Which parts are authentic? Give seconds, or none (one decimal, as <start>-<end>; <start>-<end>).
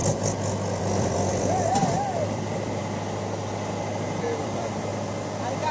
0.0-0.8; 2.8-4.4; 4.9-5.7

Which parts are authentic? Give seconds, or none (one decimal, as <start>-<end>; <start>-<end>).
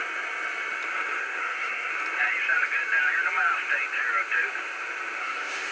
0.0-1.2; 1.9-5.2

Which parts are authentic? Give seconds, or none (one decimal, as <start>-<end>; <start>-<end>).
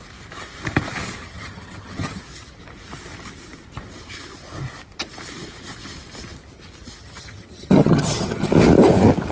0.0-1.2; 2.2-7.0; 8.5-9.3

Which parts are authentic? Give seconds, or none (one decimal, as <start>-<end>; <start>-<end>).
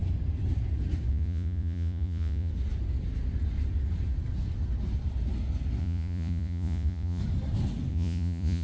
0.0-1.1; 2.5-5.8; 7.2-7.9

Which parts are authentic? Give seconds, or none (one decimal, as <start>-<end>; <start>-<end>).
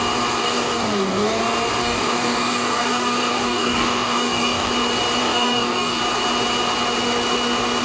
0.0-0.4; 1.4-1.8; 4.7-5.2; 6.0-7.8